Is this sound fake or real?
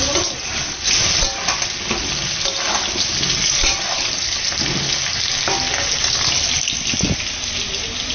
real